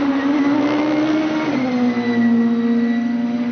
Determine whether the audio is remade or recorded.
recorded